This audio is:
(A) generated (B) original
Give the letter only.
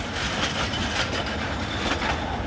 B